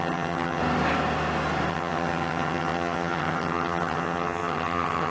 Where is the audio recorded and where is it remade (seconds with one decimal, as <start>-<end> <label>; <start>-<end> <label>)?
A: 0.0-0.6 remade; 0.6-1.7 recorded; 1.7-5.1 remade

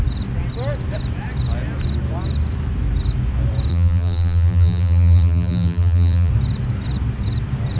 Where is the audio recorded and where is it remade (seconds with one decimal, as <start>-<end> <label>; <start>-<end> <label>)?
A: 0.0-3.7 recorded; 3.7-6.3 remade; 6.3-7.8 recorded